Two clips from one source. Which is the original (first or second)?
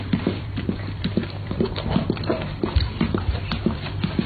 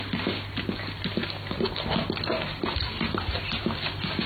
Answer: second